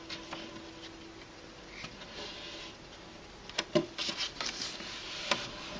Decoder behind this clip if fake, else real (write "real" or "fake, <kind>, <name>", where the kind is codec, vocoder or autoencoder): real